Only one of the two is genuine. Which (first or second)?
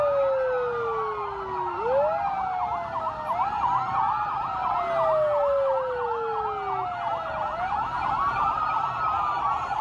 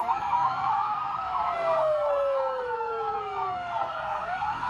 first